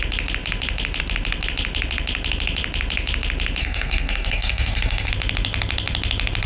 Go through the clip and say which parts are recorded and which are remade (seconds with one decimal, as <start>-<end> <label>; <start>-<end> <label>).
0.0-3.6 recorded; 3.6-5.1 remade; 5.1-6.5 recorded